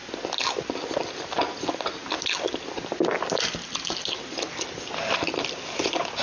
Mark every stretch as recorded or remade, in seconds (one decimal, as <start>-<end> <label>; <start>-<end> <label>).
0.0-6.2 recorded